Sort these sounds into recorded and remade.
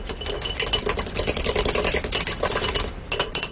recorded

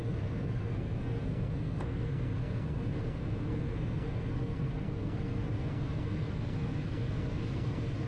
remade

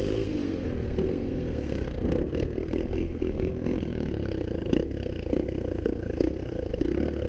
remade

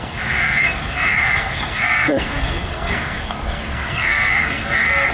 remade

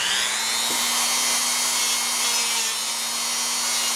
recorded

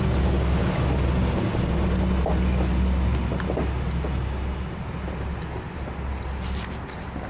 recorded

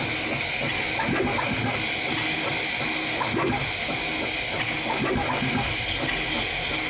recorded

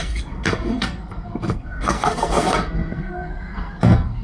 remade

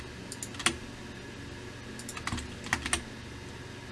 recorded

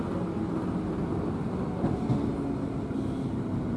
recorded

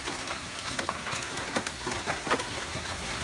remade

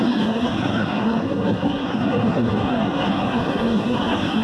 remade